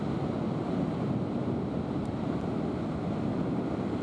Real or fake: real